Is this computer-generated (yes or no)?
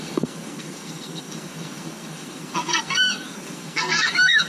yes